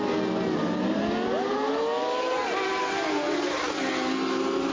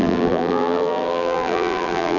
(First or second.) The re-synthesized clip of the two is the second